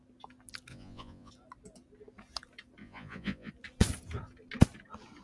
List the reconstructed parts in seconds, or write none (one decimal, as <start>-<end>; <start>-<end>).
0.7-1.3; 2.8-3.5